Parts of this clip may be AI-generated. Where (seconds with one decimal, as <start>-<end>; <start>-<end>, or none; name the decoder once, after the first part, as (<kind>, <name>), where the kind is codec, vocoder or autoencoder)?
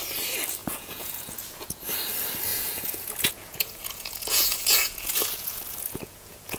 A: 0.6-1.8 (vocoder, Vocos); 2.5-6.6